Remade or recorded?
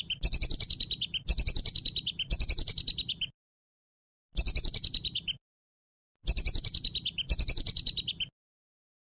recorded